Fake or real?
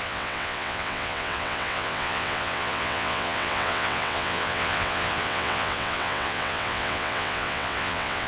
fake